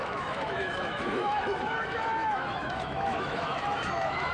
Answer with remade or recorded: remade